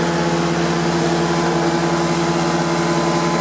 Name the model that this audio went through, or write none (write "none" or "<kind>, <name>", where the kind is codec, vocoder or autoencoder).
none